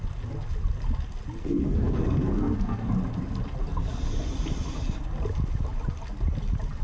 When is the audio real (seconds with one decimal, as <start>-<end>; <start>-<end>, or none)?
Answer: 0.0-1.4; 2.9-6.8